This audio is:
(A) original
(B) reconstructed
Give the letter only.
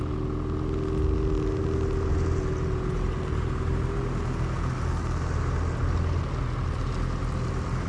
A